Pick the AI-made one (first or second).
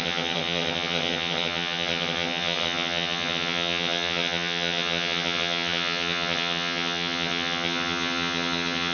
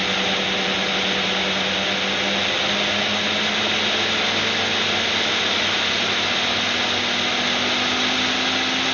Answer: first